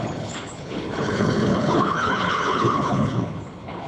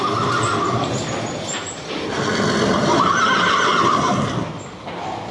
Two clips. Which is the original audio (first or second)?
second